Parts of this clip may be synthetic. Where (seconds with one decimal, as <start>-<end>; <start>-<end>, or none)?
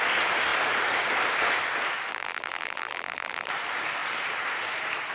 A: 2.1-3.5